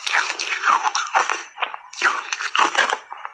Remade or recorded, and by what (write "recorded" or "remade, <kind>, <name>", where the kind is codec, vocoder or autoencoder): recorded